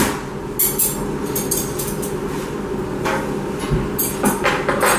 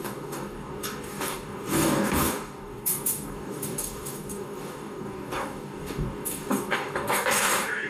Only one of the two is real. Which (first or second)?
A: first